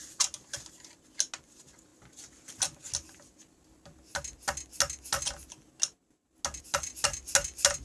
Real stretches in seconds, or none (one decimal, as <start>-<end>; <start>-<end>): 0.0-7.8